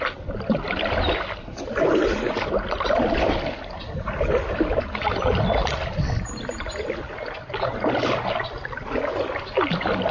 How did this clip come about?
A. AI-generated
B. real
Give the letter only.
B